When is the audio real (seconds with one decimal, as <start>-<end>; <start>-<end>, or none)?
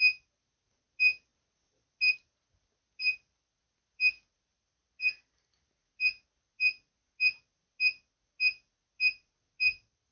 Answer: 0.0-10.1